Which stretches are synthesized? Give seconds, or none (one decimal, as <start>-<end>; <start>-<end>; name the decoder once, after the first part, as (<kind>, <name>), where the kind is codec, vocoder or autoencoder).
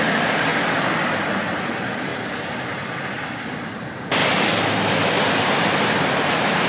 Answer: 0.0-0.5 (vocoder, BigVGAN v2); 1.6-2.1; 2.6-4.2; 6.3-6.7